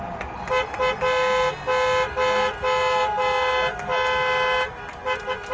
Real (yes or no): yes